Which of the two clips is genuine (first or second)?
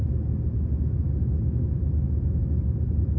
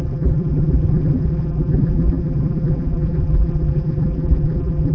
first